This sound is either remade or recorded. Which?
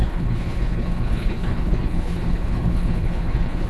remade